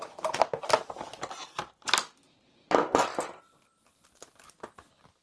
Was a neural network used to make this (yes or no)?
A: no